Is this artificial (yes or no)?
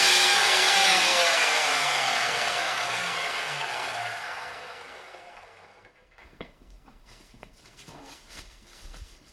yes